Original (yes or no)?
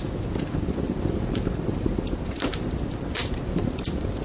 yes